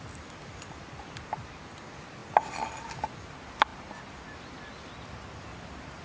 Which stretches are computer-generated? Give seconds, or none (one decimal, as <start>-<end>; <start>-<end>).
none